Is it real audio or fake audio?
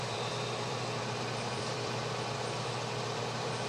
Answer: fake